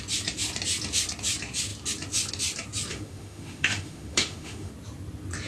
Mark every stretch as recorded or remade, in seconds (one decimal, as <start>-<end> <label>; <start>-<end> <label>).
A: 0.0-2.9 recorded; 2.9-4.7 remade; 4.7-5.5 recorded